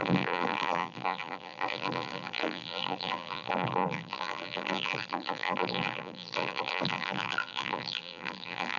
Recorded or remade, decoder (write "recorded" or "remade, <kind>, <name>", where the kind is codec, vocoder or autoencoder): remade, vocoder, BigVGAN v2